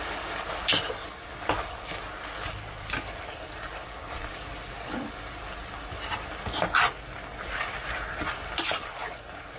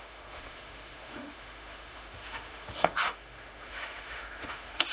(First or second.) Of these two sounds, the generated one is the second